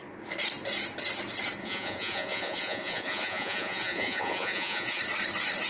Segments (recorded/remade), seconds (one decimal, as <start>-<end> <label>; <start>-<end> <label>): 0.0-1.6 recorded; 1.6-5.0 remade; 5.0-5.7 recorded